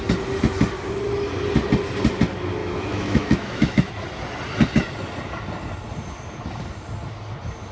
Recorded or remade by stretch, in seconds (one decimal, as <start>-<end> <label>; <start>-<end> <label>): 0.0-2.6 recorded; 2.6-3.9 remade; 3.9-7.7 recorded